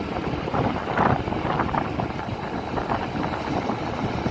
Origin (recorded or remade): recorded